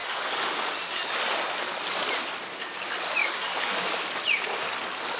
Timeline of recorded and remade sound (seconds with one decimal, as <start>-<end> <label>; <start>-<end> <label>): 0.0-0.6 remade; 0.6-3.2 recorded; 3.2-3.9 remade; 3.9-5.2 recorded